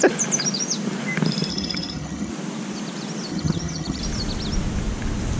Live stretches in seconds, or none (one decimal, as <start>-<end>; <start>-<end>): 0.0-1.5; 2.3-3.3; 4.0-5.4